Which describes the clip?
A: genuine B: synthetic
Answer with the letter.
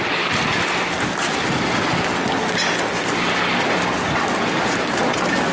A